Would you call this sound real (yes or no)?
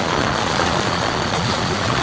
no